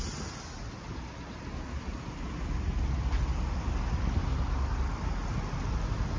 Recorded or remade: recorded